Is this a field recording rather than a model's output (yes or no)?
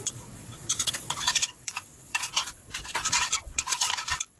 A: no